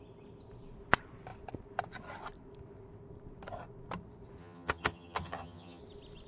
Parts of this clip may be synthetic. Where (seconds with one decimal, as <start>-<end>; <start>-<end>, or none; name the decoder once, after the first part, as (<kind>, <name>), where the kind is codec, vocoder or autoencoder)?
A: 4.4-5.8 (vocoder, HiFi-GAN)